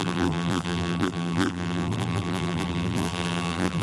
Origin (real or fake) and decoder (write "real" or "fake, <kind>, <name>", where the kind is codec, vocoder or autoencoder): fake, vocoder, BigVGAN v2